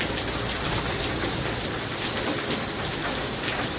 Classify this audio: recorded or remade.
recorded